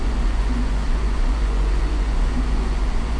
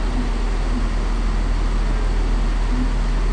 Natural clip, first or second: second